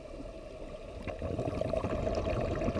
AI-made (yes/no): no